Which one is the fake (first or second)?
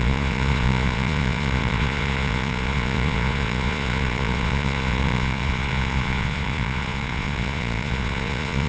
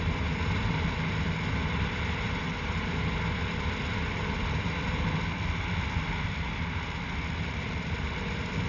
first